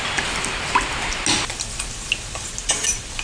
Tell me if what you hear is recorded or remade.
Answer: recorded